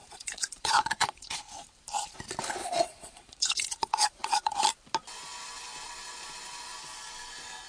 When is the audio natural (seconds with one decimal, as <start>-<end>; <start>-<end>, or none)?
1.4-2.6; 4.5-7.7